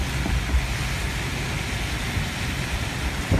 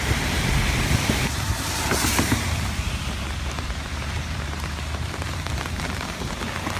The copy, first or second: second